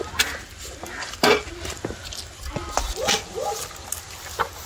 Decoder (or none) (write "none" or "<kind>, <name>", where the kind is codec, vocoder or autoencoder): none